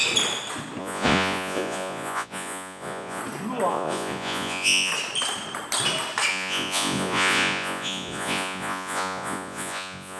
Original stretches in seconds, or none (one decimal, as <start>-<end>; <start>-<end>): 0.0-0.8; 3.2-3.7; 4.9-6.3